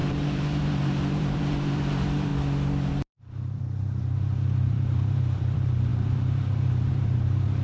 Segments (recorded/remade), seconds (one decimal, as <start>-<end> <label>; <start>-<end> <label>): 0.0-2.3 remade; 2.3-2.9 recorded; 2.9-7.6 remade